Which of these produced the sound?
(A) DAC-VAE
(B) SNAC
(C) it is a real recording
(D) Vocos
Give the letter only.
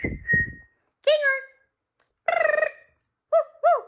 C